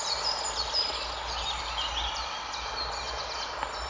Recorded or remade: recorded